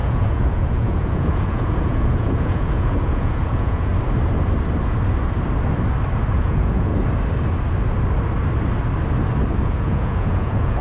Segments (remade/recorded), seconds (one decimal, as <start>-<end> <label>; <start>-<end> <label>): 0.0-3.9 remade; 3.9-6.3 recorded; 6.3-6.9 remade; 6.9-9.6 recorded; 9.6-10.8 remade